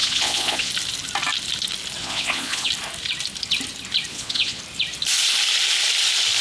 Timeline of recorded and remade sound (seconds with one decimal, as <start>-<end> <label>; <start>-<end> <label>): 0.0-0.7 remade; 0.7-2.0 recorded; 2.0-2.7 remade; 2.7-4.1 recorded; 4.1-4.6 remade; 4.6-6.4 recorded